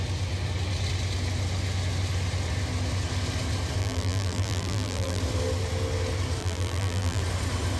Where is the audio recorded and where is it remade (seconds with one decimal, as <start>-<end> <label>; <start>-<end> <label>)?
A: 0.0-3.8 recorded; 3.8-5.2 remade; 5.2-6.4 recorded; 6.4-7.2 remade; 7.2-7.8 recorded